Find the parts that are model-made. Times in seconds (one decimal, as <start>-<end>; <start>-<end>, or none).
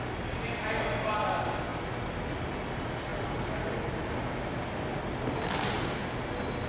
1.7-2.5; 3.1-4.2